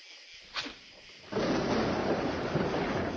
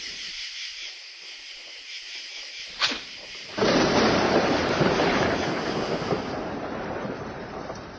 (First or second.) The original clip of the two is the first